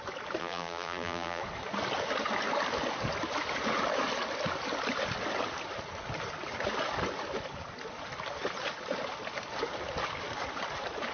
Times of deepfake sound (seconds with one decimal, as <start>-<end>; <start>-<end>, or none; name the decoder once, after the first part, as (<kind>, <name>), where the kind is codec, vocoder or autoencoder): 0.4-1.4 (vocoder, BigVGAN v2)